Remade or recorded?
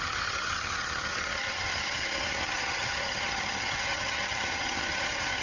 remade